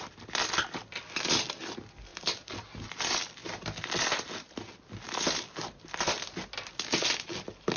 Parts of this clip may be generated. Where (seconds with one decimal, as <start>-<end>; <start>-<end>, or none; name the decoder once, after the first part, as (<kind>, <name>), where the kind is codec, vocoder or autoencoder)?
none